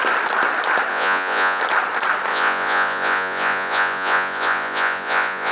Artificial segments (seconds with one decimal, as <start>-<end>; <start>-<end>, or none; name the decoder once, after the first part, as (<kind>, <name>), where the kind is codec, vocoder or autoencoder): 0.9-1.6 (vocoder, Vocos); 2.3-5.5